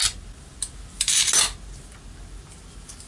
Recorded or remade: recorded